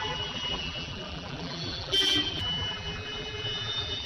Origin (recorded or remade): remade